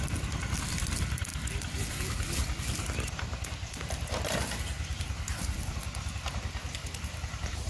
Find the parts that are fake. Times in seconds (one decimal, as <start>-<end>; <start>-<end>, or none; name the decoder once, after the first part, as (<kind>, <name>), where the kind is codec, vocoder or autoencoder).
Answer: 3.6-4.2 (vocoder, BigVGAN v2); 4.9-5.4